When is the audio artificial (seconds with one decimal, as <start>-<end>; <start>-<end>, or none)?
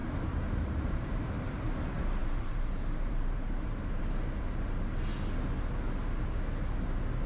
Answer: 0.0-1.6; 2.2-4.0